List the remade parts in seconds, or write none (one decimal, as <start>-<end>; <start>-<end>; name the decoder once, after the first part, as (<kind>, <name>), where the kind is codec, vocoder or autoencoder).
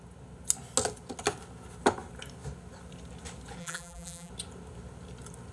3.6-4.3 (vocoder, BigVGAN v2)